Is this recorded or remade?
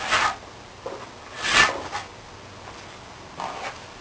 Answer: recorded